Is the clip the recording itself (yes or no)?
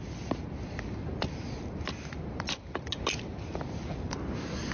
yes